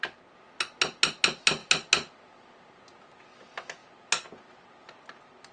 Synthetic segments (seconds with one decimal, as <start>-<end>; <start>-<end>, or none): none